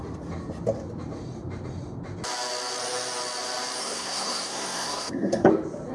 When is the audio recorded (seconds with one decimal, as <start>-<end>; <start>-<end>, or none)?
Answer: 0.0-3.8; 5.5-5.9

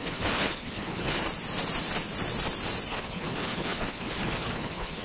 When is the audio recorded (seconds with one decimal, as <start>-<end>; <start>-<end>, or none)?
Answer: 1.2-2.9

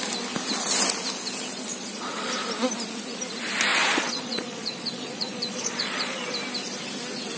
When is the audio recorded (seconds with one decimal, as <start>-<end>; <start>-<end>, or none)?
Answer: 0.0-1.7; 2.3-3.7; 6.3-7.4

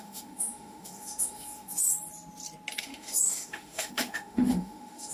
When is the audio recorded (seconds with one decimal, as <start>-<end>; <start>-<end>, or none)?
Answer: 1.9-2.8

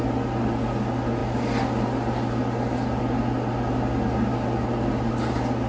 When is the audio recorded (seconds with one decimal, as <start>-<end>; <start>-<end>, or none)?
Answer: 0.0-5.7

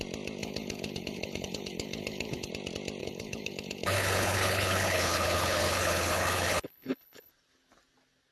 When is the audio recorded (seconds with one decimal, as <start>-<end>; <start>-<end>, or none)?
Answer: 0.0-0.4; 2.5-3.0; 7.3-8.3

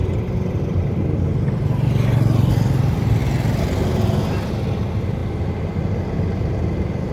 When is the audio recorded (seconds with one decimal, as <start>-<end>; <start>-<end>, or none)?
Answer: 0.0-7.1